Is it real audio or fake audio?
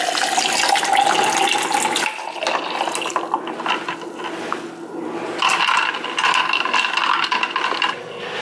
real